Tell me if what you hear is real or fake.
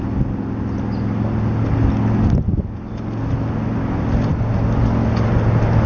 real